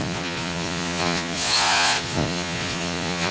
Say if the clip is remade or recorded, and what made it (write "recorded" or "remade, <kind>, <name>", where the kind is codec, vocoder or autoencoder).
remade, vocoder, Vocos